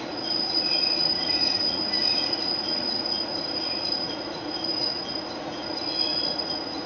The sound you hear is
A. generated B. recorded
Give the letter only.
A